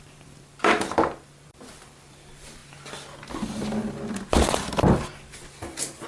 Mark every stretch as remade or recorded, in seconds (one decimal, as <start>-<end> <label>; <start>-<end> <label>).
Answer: 0.0-2.6 remade; 2.6-6.1 recorded